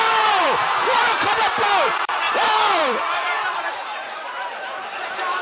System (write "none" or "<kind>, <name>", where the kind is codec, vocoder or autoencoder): vocoder, BigVGAN v2